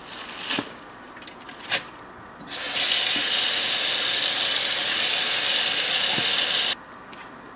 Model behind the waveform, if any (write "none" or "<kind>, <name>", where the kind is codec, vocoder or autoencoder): none